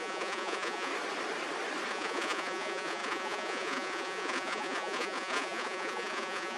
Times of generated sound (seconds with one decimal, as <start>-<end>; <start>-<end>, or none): 0.0-0.9; 1.9-6.6